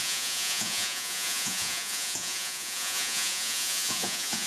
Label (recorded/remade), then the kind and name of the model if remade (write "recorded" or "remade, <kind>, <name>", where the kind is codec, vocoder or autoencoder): remade, vocoder, Vocos